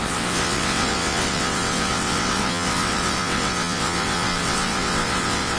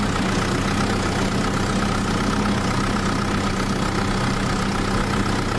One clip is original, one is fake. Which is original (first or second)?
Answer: second